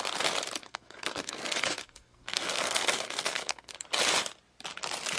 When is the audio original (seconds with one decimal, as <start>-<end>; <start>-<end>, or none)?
0.0-0.6; 3.7-5.2